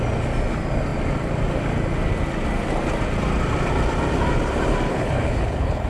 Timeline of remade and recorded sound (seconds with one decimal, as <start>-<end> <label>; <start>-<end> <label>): 0.0-4.9 recorded; 4.9-5.9 remade